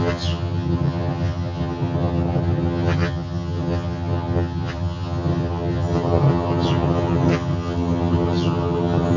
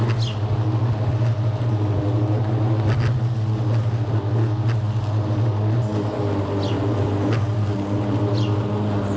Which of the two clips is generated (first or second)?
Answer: first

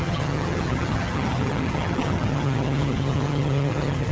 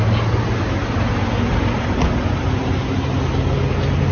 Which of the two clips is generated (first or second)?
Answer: first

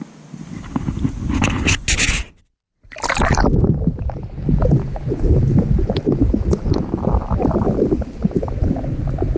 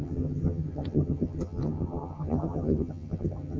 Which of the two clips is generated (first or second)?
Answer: second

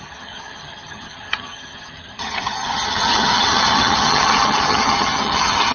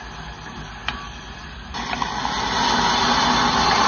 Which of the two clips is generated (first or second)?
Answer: first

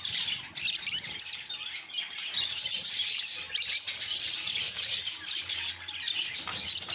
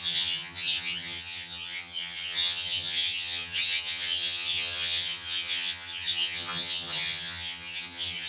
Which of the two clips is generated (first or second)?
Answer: second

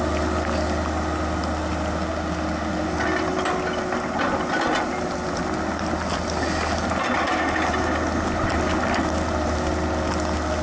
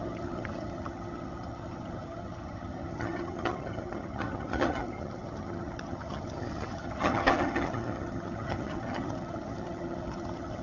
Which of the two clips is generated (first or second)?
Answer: second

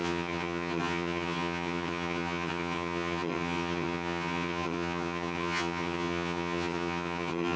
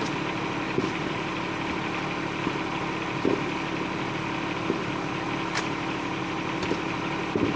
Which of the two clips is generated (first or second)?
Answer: first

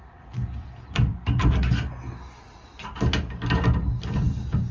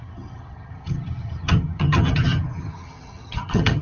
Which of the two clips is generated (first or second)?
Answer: second